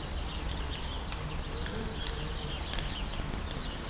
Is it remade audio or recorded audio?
recorded